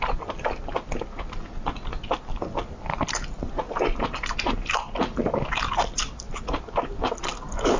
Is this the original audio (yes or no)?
yes